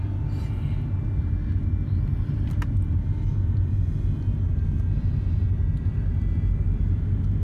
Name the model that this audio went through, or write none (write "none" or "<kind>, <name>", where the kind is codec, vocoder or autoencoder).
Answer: none